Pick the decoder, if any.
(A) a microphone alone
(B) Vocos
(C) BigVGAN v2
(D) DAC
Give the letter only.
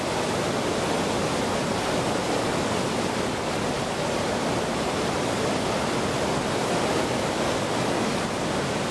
A